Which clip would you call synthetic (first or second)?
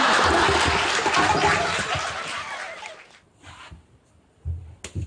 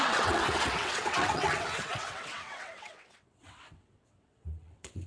second